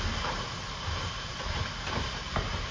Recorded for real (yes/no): no